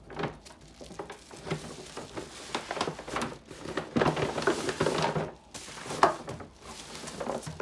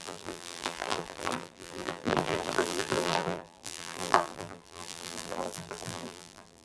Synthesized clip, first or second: second